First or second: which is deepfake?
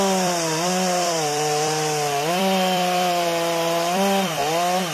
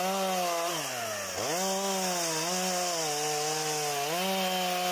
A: first